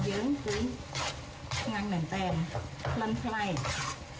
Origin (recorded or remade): recorded